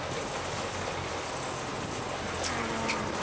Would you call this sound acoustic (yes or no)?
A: yes